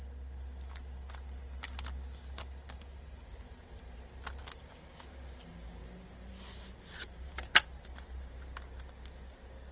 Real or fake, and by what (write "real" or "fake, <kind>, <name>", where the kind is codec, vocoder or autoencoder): real